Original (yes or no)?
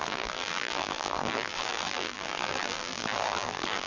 no